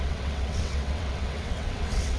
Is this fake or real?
fake